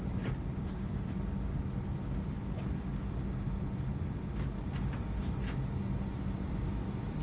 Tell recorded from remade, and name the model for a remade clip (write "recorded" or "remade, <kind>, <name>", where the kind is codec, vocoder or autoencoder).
recorded